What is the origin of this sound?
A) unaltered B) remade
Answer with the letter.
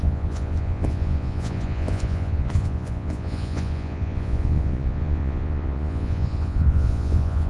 B